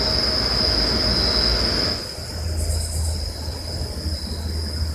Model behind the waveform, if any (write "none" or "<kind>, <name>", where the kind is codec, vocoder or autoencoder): none